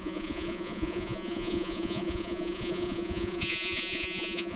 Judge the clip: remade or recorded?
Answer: remade